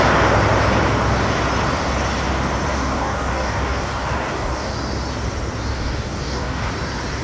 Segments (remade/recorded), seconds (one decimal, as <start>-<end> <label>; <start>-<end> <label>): 0.0-2.7 recorded; 2.7-4.7 remade; 4.7-5.7 recorded; 5.7-6.7 remade; 6.7-7.2 recorded